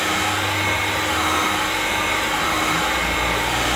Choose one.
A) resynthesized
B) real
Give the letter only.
A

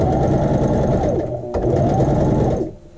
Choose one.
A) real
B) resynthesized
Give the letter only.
A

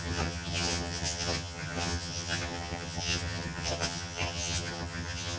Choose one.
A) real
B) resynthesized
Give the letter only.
B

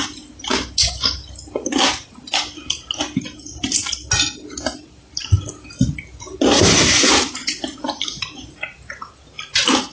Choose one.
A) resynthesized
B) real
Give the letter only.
B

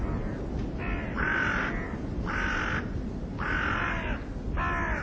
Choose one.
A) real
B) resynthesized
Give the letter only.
A